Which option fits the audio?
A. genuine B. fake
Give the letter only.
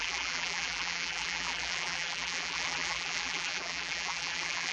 B